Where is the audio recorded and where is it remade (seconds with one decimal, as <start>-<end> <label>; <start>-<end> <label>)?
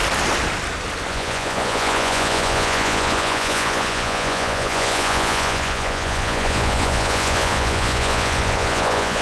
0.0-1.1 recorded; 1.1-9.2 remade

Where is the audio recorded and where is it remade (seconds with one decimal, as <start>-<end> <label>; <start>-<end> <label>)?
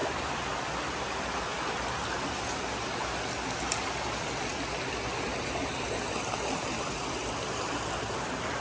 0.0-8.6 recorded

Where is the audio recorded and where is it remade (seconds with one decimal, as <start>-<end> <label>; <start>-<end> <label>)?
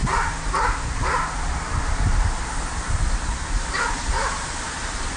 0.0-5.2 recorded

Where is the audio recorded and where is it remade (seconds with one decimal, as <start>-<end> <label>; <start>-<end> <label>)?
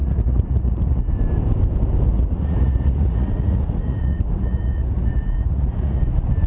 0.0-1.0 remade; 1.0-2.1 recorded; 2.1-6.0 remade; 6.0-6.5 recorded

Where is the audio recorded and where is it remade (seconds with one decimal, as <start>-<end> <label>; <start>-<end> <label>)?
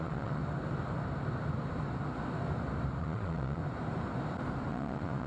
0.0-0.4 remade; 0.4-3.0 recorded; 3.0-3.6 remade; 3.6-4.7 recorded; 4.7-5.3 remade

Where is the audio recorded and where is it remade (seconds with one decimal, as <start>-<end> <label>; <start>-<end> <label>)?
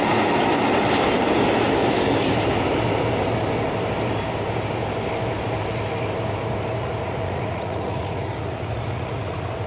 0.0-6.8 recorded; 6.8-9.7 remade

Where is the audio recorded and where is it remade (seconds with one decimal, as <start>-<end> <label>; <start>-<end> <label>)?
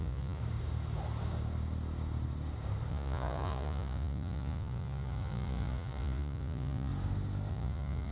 0.0-0.4 remade; 0.4-2.9 recorded; 2.9-6.9 remade; 6.9-7.5 recorded; 7.5-8.1 remade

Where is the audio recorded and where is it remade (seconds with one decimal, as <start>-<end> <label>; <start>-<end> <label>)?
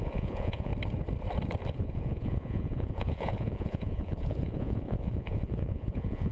0.0-0.7 remade; 0.7-1.7 recorded; 1.7-6.3 remade